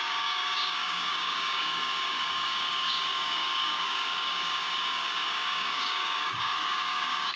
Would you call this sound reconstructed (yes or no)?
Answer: yes